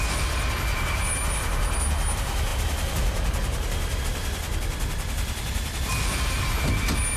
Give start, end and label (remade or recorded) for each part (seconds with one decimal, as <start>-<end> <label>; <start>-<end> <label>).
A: 0.0-7.2 recorded